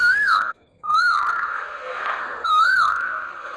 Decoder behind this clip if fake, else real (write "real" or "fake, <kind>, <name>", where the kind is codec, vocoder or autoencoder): fake, codec, SNAC